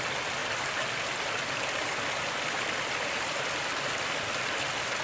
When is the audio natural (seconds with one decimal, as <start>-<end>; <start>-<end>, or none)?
0.0-5.0